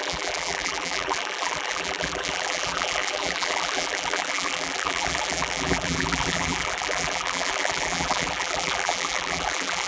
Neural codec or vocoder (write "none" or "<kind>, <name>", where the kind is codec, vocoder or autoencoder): vocoder, BigVGAN v2